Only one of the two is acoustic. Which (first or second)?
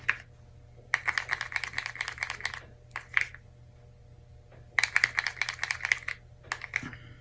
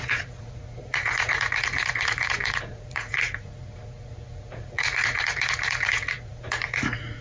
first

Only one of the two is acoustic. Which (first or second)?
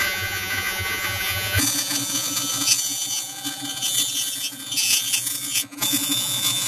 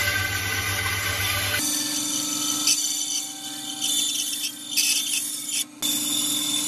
second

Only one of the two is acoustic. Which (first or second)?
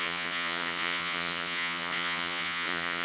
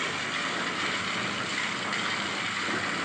second